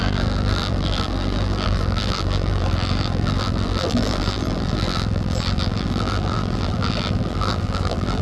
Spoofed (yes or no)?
yes